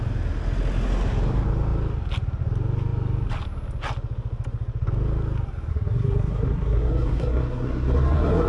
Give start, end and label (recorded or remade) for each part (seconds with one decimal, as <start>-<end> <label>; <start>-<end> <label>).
0.0-5.7 recorded; 5.7-8.5 remade